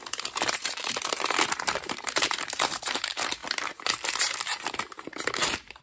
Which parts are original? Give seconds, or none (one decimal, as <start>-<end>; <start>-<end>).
3.4-4.1